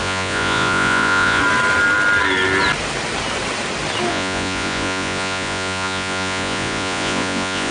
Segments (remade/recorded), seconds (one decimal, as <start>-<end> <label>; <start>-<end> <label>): 0.0-1.4 remade; 1.4-4.1 recorded; 4.1-7.7 remade